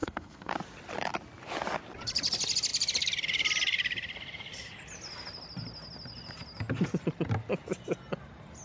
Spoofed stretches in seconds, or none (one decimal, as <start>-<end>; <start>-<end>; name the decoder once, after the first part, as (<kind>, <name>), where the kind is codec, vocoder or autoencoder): 0.0-0.5 (codec, SNAC)

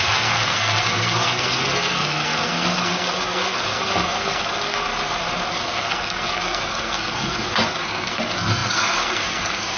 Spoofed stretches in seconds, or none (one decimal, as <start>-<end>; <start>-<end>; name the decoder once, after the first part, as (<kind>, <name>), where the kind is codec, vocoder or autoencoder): 0.0-4.9 (codec, SNAC); 5.5-9.8

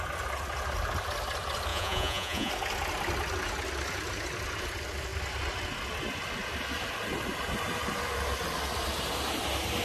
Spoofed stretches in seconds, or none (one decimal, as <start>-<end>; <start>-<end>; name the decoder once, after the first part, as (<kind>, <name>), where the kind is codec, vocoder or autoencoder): 1.7-2.5 (vocoder, Vocos)

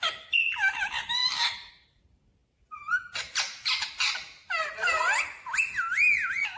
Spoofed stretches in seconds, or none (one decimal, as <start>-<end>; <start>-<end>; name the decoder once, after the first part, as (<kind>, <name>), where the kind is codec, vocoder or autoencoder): none

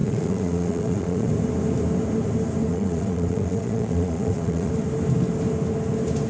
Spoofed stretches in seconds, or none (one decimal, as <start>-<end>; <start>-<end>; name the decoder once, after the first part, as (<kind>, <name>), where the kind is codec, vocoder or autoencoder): 0.0-1.3 (vocoder, Vocos); 2.7-4.7

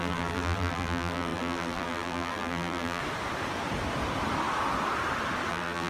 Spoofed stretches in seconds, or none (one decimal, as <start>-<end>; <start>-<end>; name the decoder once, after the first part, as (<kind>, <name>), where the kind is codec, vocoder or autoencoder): 0.0-3.0 (vocoder, BigVGAN v2); 5.5-5.9